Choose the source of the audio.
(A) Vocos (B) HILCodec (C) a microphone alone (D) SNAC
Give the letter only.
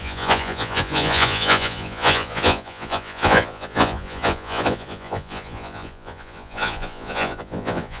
A